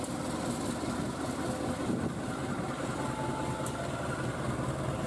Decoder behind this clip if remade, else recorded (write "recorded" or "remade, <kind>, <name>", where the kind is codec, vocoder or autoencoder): recorded